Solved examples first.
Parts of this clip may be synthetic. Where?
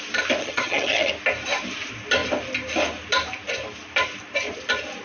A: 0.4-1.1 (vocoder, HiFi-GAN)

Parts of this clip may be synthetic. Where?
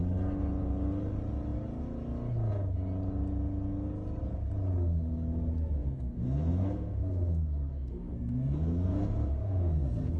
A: 5.8-10.2 (codec, SNAC)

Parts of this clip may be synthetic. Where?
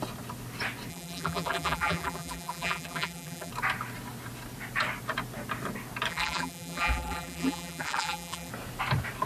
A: 0.9-3.5 (vocoder, BigVGAN v2); 6.1-8.5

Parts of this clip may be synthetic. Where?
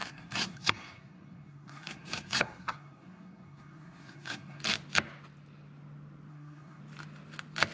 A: 0.0-4.6 (codec, SNAC); 6.3-6.8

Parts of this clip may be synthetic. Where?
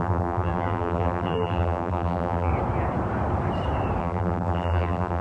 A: 0.0-2.5 (vocoder, BigVGAN v2); 4.0-5.2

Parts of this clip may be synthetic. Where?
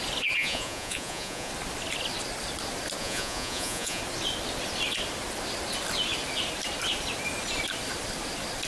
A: 0.4-1.5 (vocoder, Vocos); 3.0-4.0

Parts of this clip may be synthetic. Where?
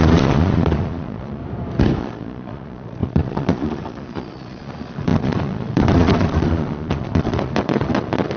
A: 0.0-1.4 (vocoder, Vocos); 2.0-8.4